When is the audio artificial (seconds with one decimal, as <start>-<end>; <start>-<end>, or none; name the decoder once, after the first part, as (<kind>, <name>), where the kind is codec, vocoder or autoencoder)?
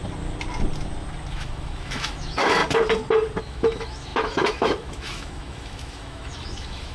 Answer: 1.3-2.6 (autoencoder, DAC-VAE); 3.4-6.9